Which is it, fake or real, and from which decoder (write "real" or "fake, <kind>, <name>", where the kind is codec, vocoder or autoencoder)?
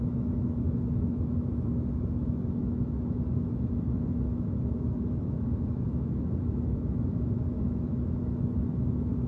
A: fake, autoencoder, DAC-VAE